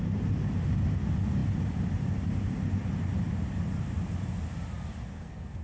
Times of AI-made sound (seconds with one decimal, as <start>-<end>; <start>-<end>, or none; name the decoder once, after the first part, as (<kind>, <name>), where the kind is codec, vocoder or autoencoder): 5.1-5.6 (codec, SNAC)